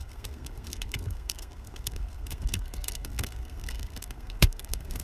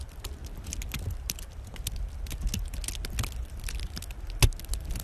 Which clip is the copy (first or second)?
first